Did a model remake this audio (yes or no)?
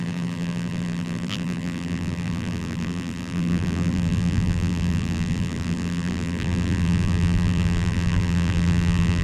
yes